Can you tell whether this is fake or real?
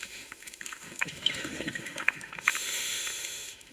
fake